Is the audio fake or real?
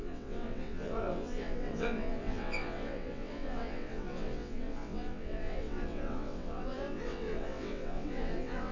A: fake